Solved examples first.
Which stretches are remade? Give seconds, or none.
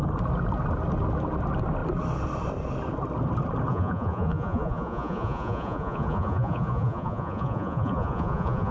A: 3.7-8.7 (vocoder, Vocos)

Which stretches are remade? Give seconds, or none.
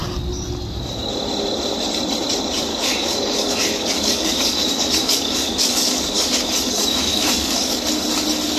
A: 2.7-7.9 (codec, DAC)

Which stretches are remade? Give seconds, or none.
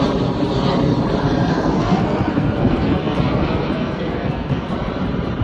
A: 1.5-4.7 (codec, SNAC)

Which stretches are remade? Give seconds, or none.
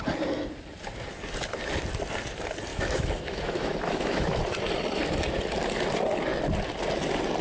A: 2.7-4.4 (autoencoder, DAC-VAE)